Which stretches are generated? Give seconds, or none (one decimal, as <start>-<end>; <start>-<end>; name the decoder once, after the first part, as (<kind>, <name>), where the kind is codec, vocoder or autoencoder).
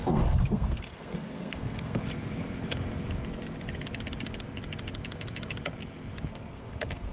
0.0-2.0 (codec, SNAC); 6.3-7.1